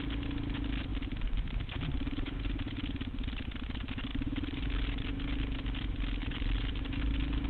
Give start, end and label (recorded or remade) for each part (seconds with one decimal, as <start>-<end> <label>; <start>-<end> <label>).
0.0-4.1 recorded; 4.1-5.1 remade; 5.1-6.2 recorded; 6.2-7.0 remade; 7.0-7.5 recorded